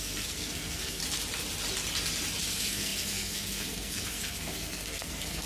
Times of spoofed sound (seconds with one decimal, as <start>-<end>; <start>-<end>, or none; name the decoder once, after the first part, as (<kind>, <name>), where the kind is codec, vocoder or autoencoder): 0.0-1.0 (codec, SNAC); 2.4-5.5